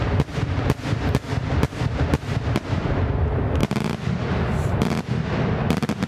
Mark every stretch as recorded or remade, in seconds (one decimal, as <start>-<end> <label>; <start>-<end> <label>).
0.0-6.1 recorded